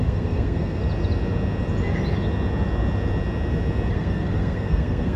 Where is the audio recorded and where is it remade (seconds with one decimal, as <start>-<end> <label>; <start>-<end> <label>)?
0.0-0.8 remade; 0.8-3.9 recorded; 3.9-5.2 remade